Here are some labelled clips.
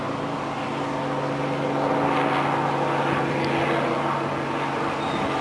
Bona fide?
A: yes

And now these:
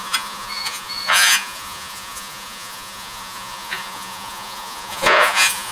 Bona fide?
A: no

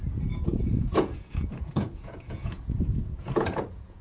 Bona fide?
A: no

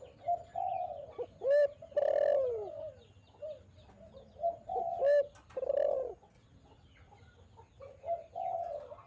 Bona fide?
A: yes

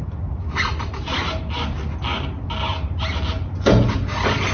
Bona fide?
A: yes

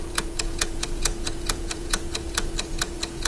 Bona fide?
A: no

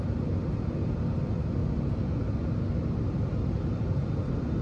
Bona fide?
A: yes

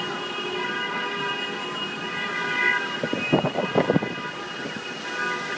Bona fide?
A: yes